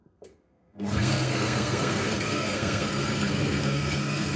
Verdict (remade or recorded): remade